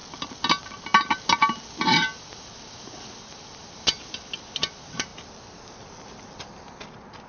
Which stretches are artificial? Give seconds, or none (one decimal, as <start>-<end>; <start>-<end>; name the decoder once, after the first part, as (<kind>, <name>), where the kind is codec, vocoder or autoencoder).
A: none